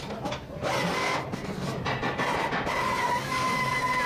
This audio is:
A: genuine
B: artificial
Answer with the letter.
A